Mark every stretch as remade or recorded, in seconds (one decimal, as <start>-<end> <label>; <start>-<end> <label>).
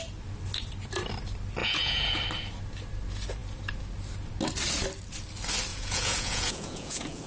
0.0-1.6 recorded; 1.6-2.2 remade; 2.2-5.7 recorded; 5.7-7.3 remade